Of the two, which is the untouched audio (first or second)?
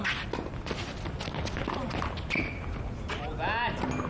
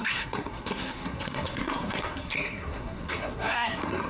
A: first